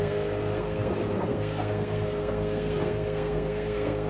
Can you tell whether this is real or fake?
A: fake